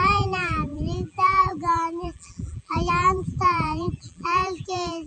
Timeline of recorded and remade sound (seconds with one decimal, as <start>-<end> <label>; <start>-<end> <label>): 0.0-5.1 remade